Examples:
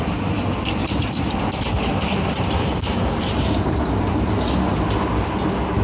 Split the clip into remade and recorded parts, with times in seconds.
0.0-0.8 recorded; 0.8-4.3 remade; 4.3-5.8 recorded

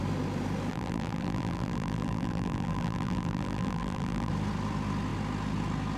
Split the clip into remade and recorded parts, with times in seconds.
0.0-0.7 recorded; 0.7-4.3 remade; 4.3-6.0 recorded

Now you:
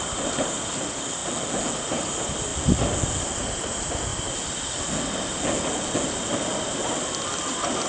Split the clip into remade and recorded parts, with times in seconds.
0.0-1.2 remade; 1.2-1.9 recorded; 1.9-2.5 remade; 2.5-3.4 recorded; 3.4-4.1 remade; 4.1-7.4 recorded; 7.4-7.9 remade

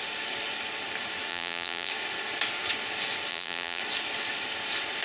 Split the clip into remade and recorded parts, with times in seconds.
0.0-1.3 recorded; 1.3-1.9 remade; 1.9-3.3 recorded; 3.3-3.8 remade; 3.8-5.0 recorded

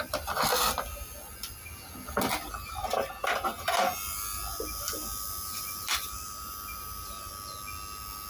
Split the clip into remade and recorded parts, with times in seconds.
0.0-2.8 recorded; 2.8-7.3 remade; 7.3-8.3 recorded

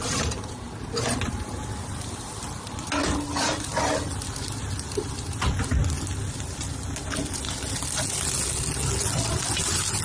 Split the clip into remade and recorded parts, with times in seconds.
0.0-10.0 recorded